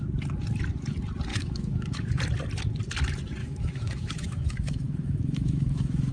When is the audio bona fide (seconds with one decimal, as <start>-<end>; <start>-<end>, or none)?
0.0-1.3; 2.2-3.4

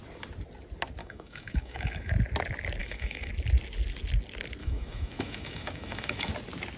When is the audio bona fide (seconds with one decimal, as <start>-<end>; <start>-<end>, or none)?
0.0-1.0; 2.1-2.8; 3.3-4.6; 6.3-6.8